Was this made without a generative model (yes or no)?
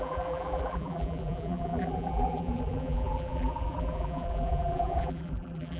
no